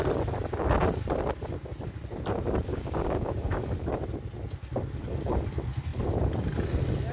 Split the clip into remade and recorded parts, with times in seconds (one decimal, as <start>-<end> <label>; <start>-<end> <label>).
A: 0.0-2.7 recorded; 2.7-3.6 remade; 3.6-7.1 recorded